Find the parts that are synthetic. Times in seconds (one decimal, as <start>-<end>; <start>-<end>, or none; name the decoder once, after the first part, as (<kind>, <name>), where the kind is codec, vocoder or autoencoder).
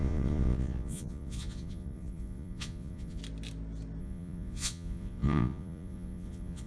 0.0-3.2 (vocoder, Vocos); 4.0-6.7